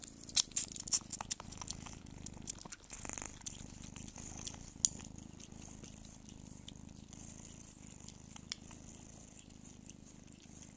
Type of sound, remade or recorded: recorded